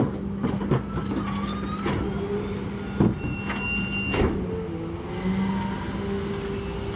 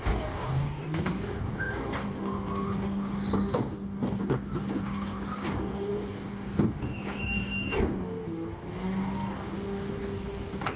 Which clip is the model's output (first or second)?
second